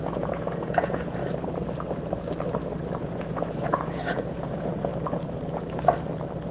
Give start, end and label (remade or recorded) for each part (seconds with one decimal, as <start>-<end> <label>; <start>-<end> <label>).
0.0-1.2 remade; 1.2-3.0 recorded; 3.0-4.9 remade; 4.9-6.5 recorded